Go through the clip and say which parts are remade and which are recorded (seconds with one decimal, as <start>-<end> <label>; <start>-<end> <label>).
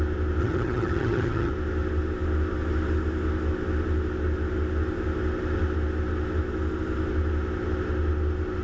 0.0-0.4 recorded; 0.4-1.5 remade; 1.5-8.6 recorded